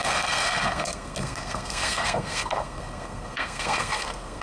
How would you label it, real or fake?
fake